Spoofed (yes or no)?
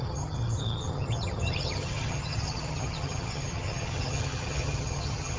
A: yes